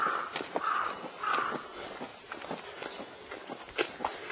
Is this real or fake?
real